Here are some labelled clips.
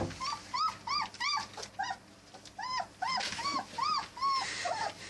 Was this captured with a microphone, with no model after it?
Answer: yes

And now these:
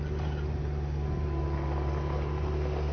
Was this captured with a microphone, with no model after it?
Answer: yes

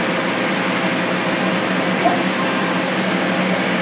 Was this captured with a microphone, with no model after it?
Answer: yes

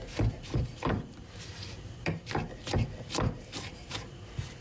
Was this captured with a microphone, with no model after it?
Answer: no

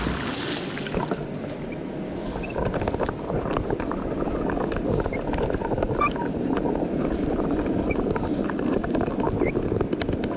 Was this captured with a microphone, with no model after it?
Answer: yes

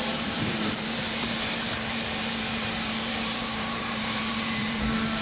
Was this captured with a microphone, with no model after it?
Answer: no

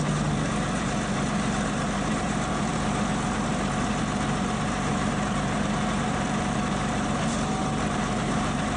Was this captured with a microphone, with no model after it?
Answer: no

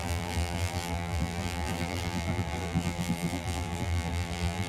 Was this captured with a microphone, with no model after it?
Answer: no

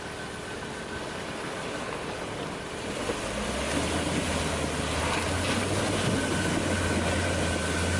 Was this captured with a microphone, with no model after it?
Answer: yes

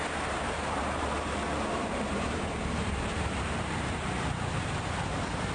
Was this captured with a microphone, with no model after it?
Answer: no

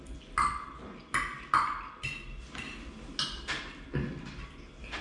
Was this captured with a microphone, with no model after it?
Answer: yes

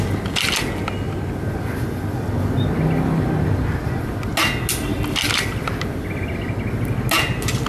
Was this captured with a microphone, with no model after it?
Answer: yes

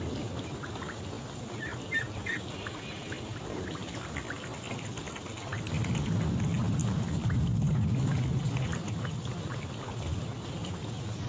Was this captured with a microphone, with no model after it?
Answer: yes